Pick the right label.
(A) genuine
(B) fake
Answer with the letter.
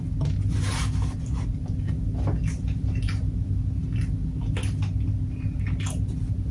A